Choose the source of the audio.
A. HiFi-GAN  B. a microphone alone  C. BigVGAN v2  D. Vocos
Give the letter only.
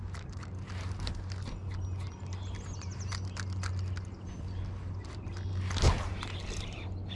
B